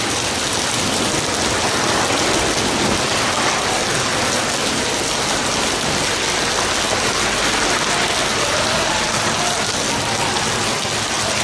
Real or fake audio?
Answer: real